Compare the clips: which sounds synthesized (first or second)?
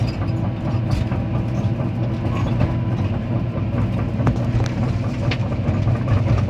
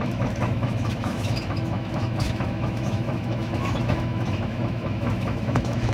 second